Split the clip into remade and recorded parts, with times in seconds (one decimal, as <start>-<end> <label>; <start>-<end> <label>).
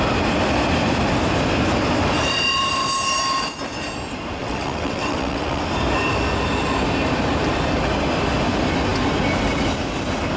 0.0-4.4 recorded; 4.4-5.6 remade; 5.6-10.4 recorded